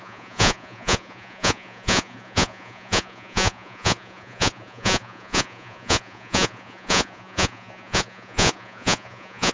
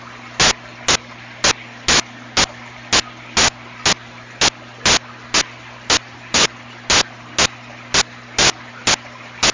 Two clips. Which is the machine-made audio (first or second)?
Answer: first